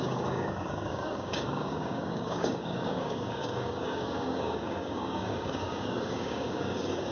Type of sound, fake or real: fake